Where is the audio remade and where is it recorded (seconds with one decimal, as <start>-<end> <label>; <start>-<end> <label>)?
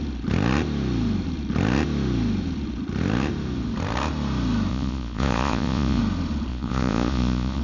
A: 0.0-4.7 recorded; 4.7-6.0 remade; 6.0-6.5 recorded; 6.5-7.6 remade